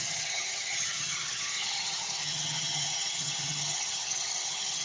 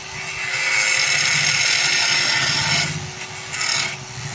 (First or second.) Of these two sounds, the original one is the second